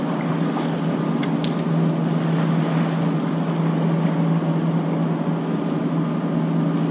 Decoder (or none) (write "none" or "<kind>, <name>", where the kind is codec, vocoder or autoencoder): none